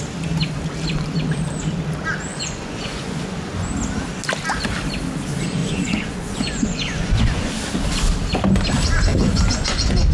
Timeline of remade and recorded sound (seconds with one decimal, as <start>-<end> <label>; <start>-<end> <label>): 0.0-2.3 recorded; 2.3-3.7 remade; 3.7-5.6 recorded; 5.6-7.5 remade; 7.5-9.1 recorded; 9.1-10.1 remade